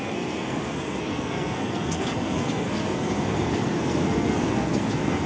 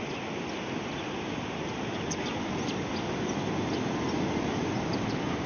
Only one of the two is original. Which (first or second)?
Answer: second